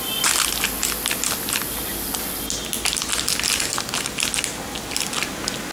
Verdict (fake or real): real